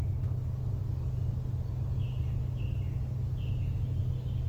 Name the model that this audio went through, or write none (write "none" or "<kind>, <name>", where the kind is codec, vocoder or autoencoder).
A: none